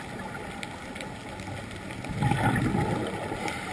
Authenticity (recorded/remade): recorded